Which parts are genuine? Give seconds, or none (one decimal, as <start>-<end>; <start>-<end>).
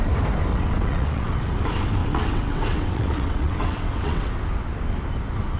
0.0-0.5; 1.5-2.0; 4.3-5.6